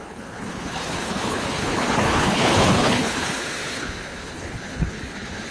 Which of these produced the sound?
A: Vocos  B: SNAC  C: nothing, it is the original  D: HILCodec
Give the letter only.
D